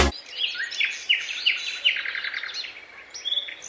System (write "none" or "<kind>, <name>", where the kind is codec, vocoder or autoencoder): none